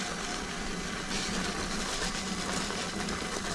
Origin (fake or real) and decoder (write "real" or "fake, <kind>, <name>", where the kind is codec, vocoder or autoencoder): real